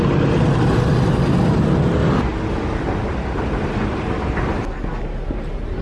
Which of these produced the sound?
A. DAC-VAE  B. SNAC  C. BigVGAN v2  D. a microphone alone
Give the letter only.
D